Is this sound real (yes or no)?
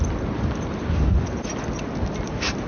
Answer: yes